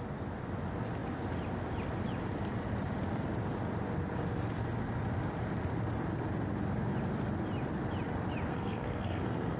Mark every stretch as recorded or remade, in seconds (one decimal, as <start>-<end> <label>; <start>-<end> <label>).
0.0-8.5 recorded; 8.5-9.6 remade

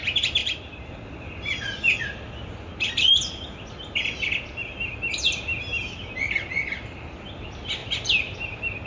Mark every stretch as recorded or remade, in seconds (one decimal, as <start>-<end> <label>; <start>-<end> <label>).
0.0-8.9 recorded